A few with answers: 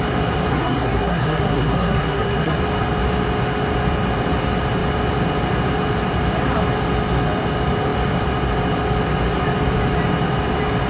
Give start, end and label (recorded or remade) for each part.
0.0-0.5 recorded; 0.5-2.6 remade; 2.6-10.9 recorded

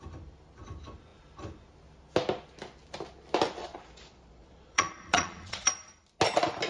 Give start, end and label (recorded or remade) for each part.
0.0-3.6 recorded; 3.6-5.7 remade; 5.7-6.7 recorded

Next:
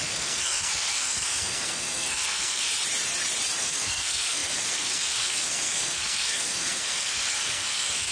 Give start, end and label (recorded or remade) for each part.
0.0-2.7 remade; 2.7-3.6 recorded; 3.6-8.1 remade

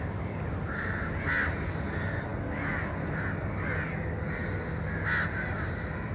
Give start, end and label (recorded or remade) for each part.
0.0-6.1 recorded